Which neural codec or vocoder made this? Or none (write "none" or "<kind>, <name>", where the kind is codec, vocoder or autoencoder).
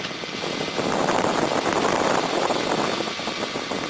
none